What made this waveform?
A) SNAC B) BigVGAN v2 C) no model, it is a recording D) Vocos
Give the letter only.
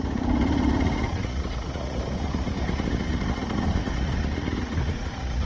D